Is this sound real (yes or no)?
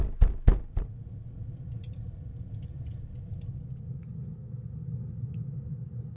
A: yes